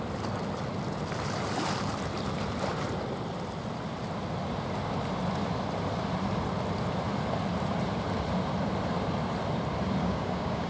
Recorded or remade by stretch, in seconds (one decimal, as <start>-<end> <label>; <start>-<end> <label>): 0.0-10.0 recorded; 10.0-10.7 remade